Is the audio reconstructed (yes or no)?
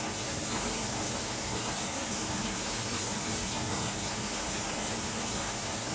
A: yes